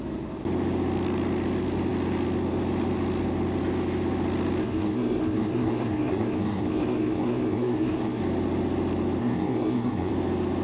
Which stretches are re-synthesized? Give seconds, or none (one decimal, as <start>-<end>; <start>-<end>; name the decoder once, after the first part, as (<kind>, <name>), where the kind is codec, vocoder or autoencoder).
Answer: 4.6-8.2 (codec, SNAC); 9.2-10.1